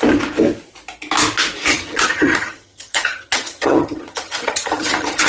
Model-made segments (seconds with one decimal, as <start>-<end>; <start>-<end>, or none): 1.7-5.3

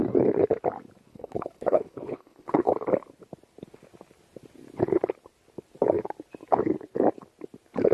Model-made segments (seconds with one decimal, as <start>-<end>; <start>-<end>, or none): 1.1-2.7

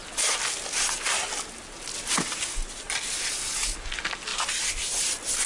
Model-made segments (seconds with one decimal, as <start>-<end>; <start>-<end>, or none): none

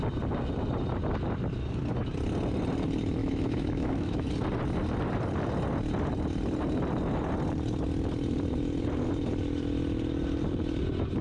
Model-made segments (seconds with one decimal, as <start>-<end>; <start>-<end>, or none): 3.2-4.3

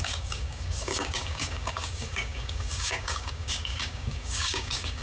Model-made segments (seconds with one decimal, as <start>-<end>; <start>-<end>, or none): 0.0-5.0

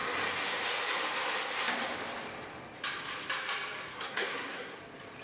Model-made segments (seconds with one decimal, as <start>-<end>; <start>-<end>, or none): 3.9-4.8

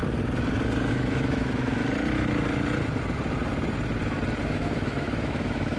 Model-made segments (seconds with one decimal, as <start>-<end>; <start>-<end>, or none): 0.9-1.8; 4.4-5.8